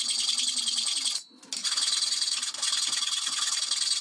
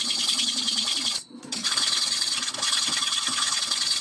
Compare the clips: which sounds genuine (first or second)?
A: first